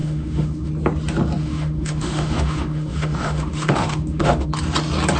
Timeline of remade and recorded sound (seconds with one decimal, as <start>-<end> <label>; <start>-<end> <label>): 0.0-0.7 remade; 0.7-1.4 recorded; 1.4-4.5 remade; 4.5-5.2 recorded